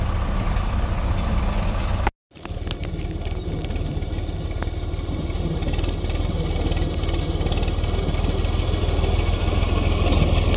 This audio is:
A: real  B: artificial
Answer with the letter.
A